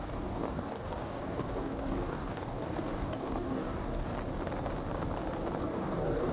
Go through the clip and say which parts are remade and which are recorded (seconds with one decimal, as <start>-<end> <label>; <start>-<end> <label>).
0.0-4.1 remade; 4.1-5.6 recorded; 5.6-6.3 remade